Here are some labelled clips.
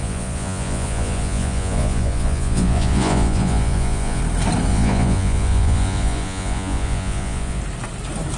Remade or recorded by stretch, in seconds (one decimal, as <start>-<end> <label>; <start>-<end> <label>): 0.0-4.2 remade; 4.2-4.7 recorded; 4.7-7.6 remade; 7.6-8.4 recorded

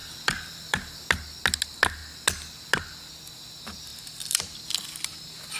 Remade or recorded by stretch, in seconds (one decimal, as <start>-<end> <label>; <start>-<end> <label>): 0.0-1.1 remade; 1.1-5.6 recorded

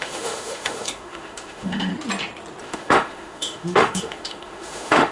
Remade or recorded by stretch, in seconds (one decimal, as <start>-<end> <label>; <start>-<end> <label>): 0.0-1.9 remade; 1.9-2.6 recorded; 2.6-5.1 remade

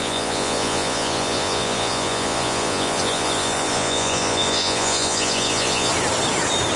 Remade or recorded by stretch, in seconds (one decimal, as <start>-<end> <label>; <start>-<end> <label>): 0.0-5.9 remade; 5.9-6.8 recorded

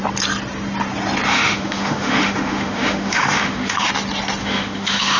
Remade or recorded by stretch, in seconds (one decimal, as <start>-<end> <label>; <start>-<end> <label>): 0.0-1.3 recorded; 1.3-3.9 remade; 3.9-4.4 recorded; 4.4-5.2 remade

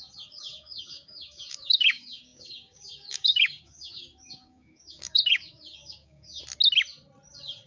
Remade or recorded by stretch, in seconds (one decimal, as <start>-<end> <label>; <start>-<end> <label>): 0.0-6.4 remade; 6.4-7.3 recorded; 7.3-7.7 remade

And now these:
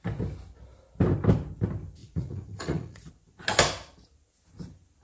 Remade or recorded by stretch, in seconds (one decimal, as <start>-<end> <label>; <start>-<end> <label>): 0.0-2.0 recorded; 2.0-3.1 remade; 3.1-5.0 recorded